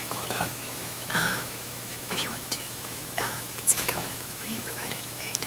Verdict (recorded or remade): remade